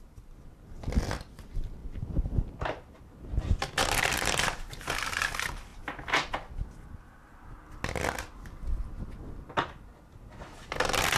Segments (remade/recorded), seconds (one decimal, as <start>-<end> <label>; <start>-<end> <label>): 0.0-11.2 recorded